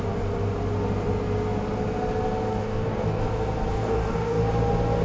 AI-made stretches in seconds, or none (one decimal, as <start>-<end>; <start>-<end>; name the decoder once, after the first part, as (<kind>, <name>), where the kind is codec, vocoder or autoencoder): 2.5-3.2 (codec, DAC); 3.7-4.4